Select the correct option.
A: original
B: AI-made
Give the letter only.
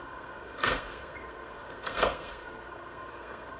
B